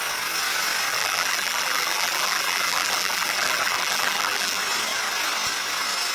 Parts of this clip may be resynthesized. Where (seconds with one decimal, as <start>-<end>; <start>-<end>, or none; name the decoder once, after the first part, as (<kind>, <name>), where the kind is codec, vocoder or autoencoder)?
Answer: 0.9-4.6 (vocoder, BigVGAN v2)